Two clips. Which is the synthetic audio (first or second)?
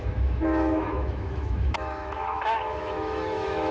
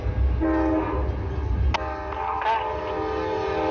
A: first